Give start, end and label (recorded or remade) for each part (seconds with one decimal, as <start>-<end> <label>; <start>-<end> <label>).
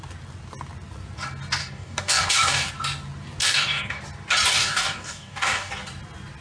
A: 0.0-1.6 recorded; 1.6-2.7 remade; 2.7-3.4 recorded; 3.4-4.0 remade; 4.0-4.5 recorded; 4.5-5.7 remade; 5.7-6.4 recorded